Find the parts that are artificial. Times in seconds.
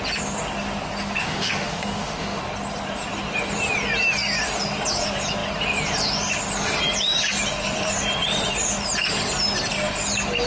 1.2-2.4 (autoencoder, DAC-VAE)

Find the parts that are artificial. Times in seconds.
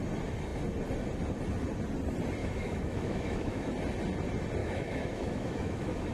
2.4-3.7 (autoencoder, DAC-VAE); 4.6-6.1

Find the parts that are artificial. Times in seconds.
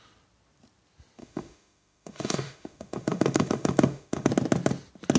1.2-4.3 (autoencoder, DAC-VAE)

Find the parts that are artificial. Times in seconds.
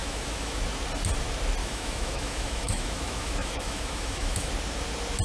0.0-0.6 (autoencoder, DAC-VAE); 1.6-4.5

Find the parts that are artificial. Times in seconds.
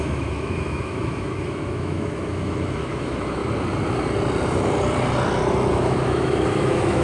0.0-3.4 (autoencoder, DAC-VAE); 5.7-7.0